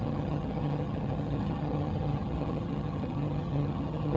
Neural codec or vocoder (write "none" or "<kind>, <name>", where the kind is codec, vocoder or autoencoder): vocoder, HiFi-GAN